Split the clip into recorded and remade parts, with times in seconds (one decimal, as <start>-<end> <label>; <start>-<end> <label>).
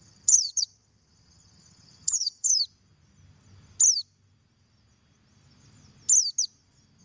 0.0-2.5 remade; 2.5-7.0 recorded